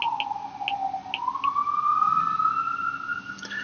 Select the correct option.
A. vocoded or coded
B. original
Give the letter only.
B